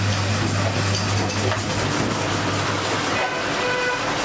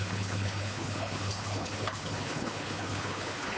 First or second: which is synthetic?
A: second